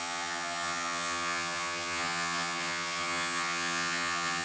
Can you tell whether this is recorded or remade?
remade